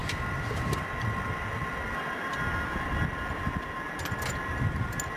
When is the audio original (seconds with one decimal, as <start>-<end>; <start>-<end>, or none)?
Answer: 0.0-5.2